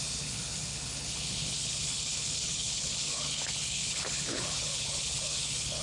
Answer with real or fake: fake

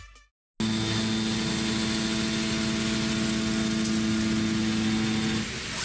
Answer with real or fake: real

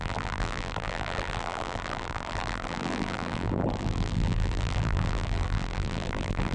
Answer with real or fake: fake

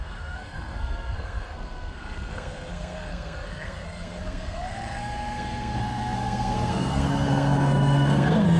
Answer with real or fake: fake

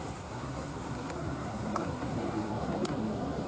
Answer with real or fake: fake